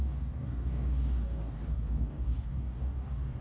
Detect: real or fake fake